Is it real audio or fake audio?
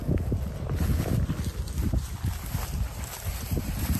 real